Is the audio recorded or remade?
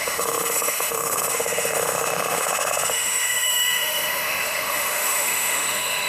remade